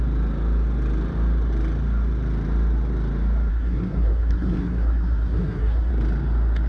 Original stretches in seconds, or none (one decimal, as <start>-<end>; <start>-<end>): 0.0-3.5; 5.9-6.7